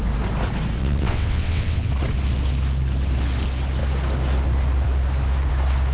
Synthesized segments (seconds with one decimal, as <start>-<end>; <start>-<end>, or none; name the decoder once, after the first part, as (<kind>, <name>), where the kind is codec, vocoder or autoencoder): 0.8-1.9 (vocoder, WaveNeXt)